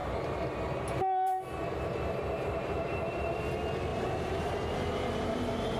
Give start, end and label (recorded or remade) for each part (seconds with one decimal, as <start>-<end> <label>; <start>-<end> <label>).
0.0-3.5 remade; 3.5-3.9 recorded; 3.9-5.8 remade

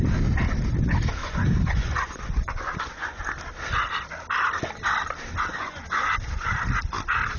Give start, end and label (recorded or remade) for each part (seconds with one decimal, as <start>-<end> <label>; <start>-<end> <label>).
0.0-1.2 recorded; 1.2-3.2 remade; 3.2-5.5 recorded; 5.5-6.5 remade; 6.5-7.4 recorded

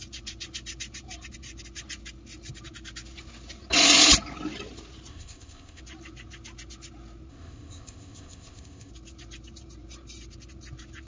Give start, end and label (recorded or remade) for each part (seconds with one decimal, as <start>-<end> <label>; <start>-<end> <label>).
0.0-5.1 recorded; 5.1-5.8 remade; 5.8-7.3 recorded; 7.3-8.9 remade; 8.9-11.1 recorded

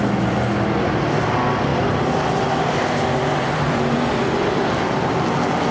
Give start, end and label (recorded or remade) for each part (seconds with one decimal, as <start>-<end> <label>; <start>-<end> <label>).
0.0-1.7 recorded; 1.7-5.1 remade; 5.1-5.7 recorded

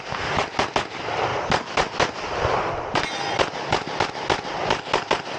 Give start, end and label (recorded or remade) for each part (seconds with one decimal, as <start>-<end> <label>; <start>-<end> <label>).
0.0-5.4 recorded

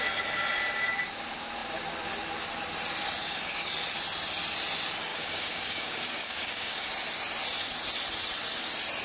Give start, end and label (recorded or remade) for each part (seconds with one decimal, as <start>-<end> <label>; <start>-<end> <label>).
0.0-3.2 recorded; 3.2-3.7 remade; 3.7-5.1 recorded; 5.1-6.9 remade; 6.9-9.0 recorded